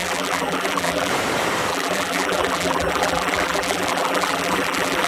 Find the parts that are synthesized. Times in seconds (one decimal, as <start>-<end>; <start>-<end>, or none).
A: 0.0-1.1; 1.7-5.1